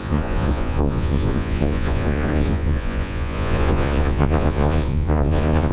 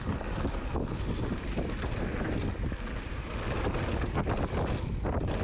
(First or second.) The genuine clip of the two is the second